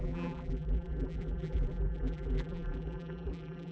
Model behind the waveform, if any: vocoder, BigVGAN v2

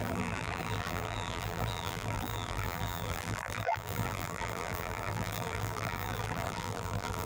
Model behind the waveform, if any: vocoder, BigVGAN v2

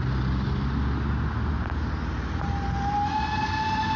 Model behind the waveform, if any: none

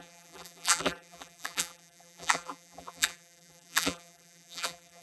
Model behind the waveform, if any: vocoder, BigVGAN v2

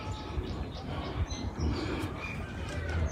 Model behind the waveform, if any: vocoder, BigVGAN v2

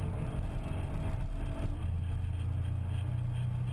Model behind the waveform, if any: none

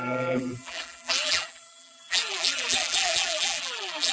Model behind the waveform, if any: vocoder, BigVGAN v2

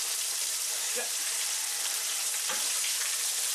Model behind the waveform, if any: vocoder, BigVGAN v2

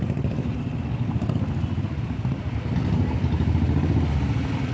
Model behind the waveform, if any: vocoder, BigVGAN v2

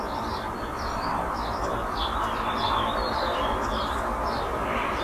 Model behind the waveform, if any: vocoder, BigVGAN v2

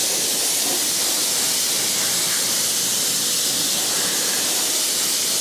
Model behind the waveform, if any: none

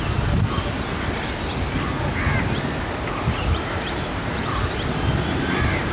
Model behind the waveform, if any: none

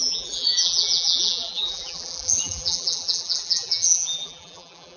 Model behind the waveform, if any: vocoder, BigVGAN v2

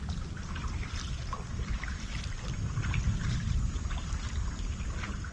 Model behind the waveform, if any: vocoder, BigVGAN v2